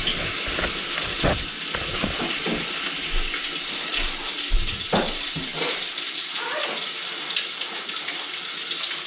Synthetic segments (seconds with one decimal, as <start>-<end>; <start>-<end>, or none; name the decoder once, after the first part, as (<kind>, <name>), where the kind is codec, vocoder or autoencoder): none